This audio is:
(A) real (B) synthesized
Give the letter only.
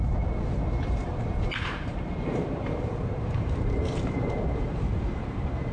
B